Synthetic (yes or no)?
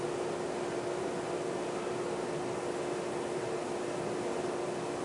no